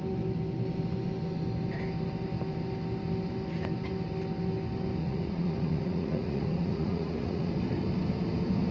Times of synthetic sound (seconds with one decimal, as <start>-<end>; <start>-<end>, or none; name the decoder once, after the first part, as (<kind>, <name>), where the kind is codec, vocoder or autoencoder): 5.0-7.5 (vocoder, Vocos)